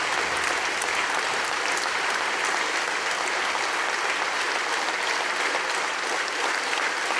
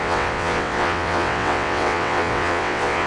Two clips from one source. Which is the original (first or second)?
first